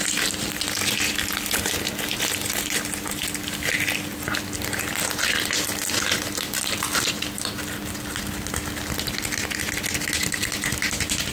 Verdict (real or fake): real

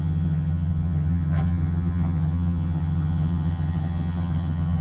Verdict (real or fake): fake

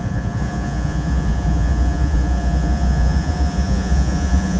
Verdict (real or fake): fake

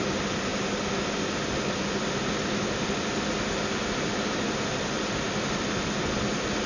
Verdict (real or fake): real